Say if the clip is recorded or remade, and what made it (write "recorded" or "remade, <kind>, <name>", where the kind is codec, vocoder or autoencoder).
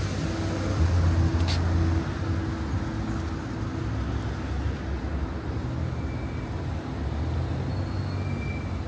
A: recorded